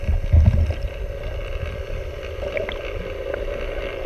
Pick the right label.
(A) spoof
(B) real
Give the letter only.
B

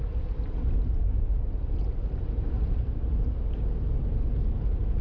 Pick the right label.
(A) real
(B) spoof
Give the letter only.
A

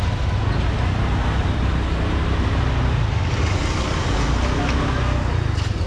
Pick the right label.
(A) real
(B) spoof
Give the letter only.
A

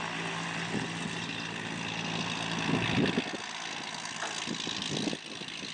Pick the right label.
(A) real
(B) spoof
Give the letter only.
A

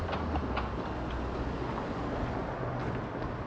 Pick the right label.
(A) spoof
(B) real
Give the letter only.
B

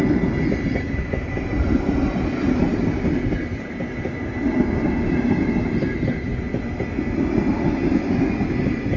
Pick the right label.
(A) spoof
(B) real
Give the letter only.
B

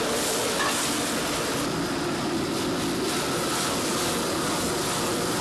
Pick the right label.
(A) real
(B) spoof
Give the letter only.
A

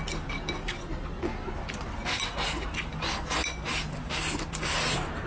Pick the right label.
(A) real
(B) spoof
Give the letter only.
A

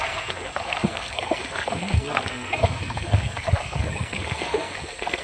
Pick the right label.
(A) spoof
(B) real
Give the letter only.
A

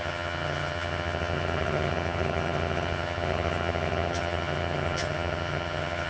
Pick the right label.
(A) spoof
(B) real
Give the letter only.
A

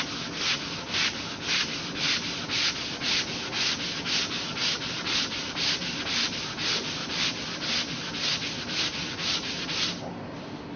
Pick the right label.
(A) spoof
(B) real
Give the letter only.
B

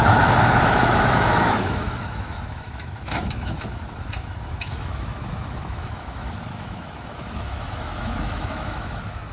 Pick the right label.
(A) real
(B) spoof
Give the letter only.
B